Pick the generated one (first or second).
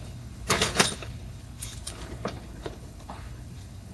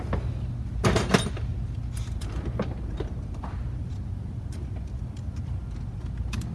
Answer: first